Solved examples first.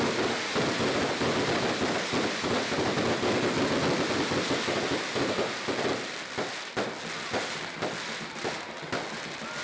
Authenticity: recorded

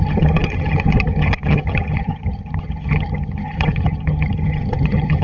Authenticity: remade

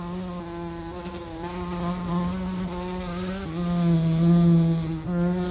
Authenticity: recorded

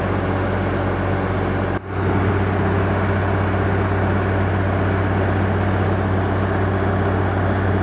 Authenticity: recorded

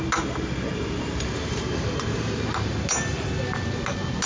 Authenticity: recorded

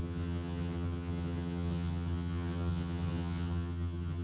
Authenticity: remade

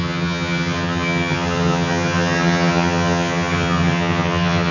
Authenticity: remade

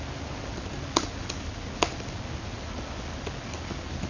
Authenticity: recorded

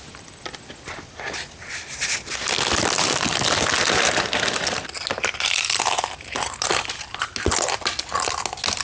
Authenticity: recorded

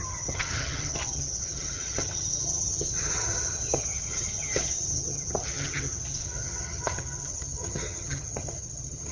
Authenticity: remade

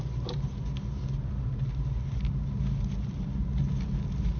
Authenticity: recorded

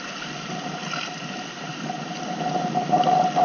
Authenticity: recorded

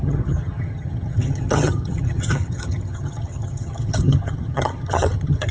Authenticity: remade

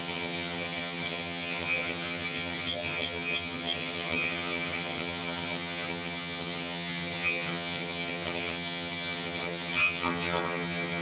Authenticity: remade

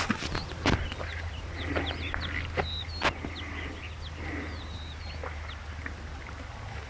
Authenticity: recorded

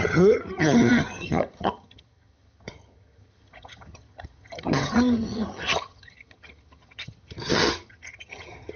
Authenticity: remade